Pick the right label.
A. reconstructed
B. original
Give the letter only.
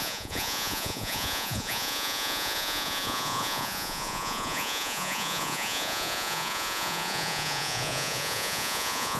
A